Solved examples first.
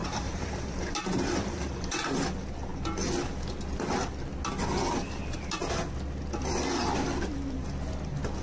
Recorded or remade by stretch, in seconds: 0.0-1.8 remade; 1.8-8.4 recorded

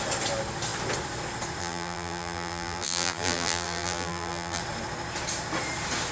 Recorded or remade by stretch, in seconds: 0.0-1.6 recorded; 1.6-4.6 remade; 4.6-6.1 recorded

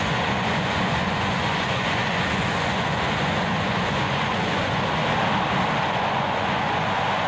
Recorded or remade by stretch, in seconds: 0.0-5.0 remade; 5.0-5.8 recorded; 5.8-7.3 remade